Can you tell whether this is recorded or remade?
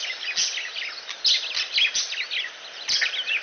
recorded